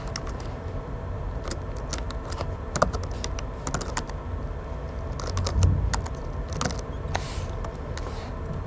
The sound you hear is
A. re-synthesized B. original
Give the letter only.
B